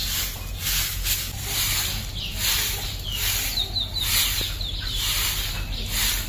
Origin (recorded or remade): recorded